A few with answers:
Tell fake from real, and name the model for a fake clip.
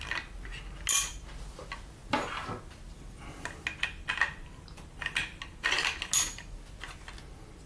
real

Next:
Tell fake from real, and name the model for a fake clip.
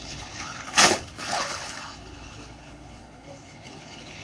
fake, codec, HILCodec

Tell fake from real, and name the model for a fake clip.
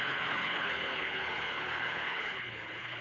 fake, codec, HILCodec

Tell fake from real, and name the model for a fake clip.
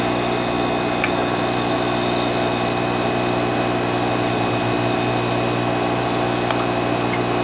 real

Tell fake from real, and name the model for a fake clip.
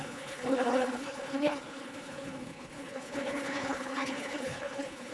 fake, codec, HILCodec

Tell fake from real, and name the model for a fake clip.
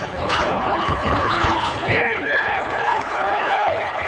fake, codec, HILCodec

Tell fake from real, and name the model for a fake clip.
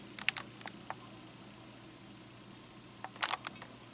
real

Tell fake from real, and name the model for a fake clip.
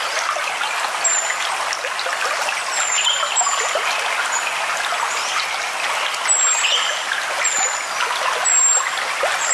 real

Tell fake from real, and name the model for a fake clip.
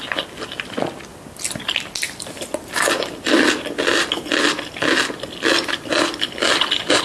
real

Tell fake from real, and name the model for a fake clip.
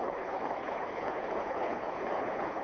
fake, codec, HILCodec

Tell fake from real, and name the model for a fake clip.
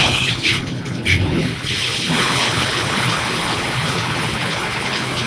fake, codec, HILCodec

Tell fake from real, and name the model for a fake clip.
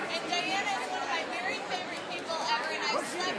real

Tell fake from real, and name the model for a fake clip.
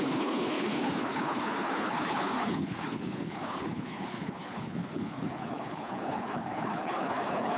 fake, codec, HILCodec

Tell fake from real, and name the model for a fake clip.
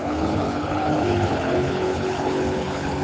fake, codec, HILCodec